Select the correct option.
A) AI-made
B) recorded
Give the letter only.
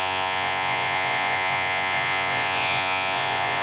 A